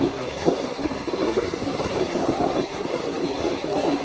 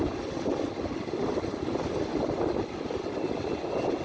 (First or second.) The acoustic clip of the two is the second